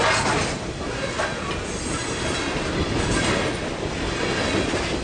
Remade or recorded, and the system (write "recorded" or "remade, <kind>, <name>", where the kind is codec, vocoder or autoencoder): recorded